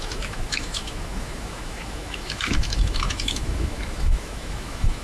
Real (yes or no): no